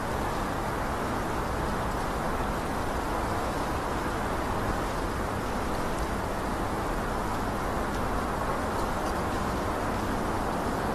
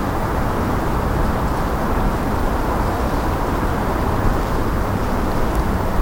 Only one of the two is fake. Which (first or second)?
second